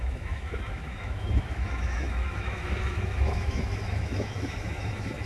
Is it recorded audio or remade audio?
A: remade